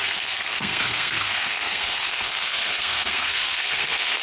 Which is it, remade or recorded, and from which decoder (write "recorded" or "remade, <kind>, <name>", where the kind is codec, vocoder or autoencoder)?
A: remade, codec, SNAC